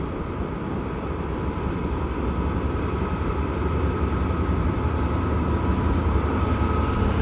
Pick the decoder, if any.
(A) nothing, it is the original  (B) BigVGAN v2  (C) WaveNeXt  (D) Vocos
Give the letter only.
B